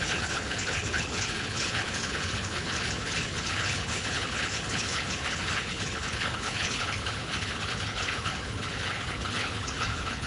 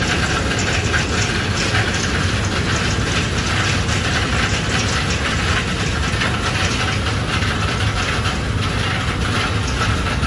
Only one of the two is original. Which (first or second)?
second